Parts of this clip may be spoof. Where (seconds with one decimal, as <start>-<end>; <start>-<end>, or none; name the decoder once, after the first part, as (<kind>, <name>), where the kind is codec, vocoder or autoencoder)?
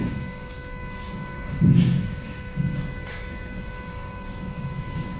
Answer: 0.0-5.2 (codec, DAC)